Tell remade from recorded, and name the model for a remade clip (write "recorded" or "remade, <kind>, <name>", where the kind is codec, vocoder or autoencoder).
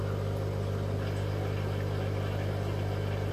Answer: recorded